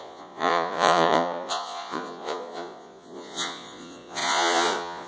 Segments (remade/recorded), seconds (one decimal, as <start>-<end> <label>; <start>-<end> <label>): 0.0-5.1 remade